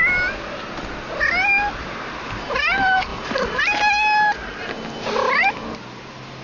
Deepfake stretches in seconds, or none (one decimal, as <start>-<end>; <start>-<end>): none